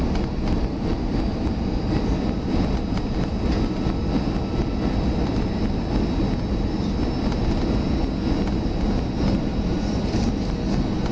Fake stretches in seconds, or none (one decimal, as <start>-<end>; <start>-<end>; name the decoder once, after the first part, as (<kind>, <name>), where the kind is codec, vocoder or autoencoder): none